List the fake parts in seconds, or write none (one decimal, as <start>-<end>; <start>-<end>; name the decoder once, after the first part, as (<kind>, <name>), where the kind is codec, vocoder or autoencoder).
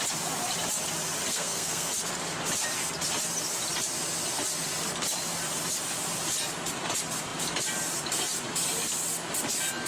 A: 1.3-1.9 (codec, SNAC)